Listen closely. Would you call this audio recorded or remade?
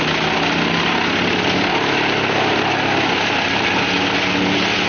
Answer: recorded